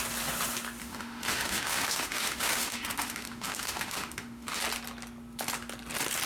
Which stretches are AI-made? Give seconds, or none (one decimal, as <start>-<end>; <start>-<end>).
0.8-4.6